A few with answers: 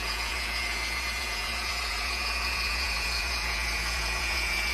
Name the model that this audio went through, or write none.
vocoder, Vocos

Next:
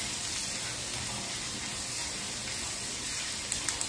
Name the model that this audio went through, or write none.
none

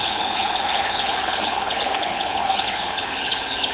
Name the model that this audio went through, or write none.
codec, HILCodec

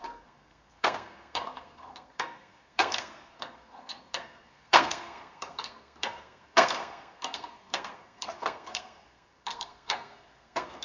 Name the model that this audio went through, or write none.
codec, SNAC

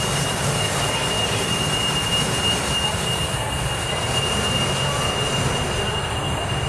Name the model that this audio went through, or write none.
none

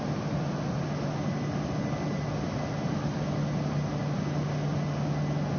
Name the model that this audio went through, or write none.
none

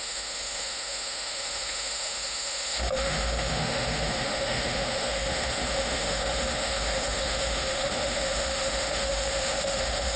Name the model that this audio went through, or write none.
autoencoder, DAC-VAE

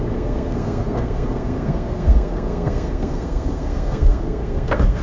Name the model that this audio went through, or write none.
codec, SNAC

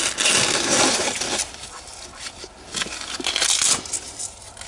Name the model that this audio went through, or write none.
none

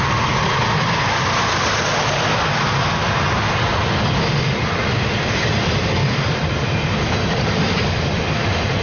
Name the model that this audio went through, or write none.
none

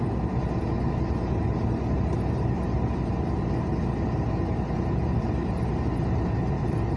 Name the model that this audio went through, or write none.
none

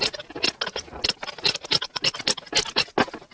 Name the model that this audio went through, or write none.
none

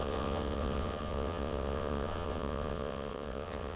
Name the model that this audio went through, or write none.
vocoder, WaveNeXt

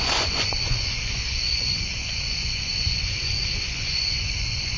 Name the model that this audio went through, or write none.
vocoder, Vocos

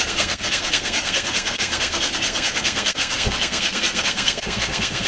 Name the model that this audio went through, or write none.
codec, SNAC